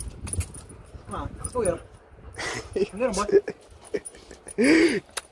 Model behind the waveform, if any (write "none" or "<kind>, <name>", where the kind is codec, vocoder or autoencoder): none